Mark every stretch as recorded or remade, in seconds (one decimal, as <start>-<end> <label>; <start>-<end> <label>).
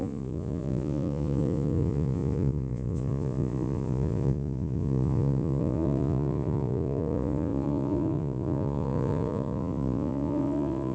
0.0-10.9 remade